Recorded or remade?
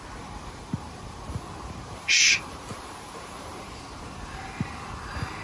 remade